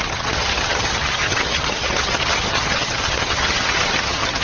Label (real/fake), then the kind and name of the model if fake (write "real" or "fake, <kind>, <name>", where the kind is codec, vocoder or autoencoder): fake, vocoder, HiFi-GAN